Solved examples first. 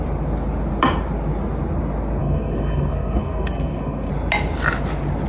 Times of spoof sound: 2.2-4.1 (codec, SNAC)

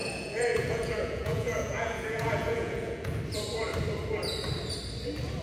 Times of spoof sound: 0.0-3.2 (vocoder, Vocos)

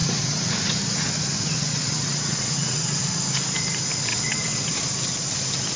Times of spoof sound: 0.0-3.0 (vocoder, WaveNeXt); 4.1-4.7

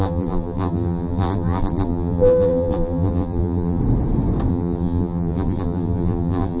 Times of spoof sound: 0.0-3.8 (vocoder, BigVGAN v2); 4.5-6.6

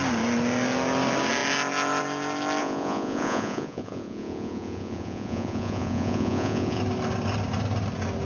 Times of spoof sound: 2.6-6.8 (vocoder, Vocos)